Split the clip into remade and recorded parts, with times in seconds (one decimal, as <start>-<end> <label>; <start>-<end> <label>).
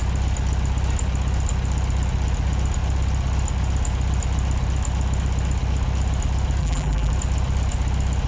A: 0.0-6.6 recorded; 6.6-7.1 remade; 7.1-8.3 recorded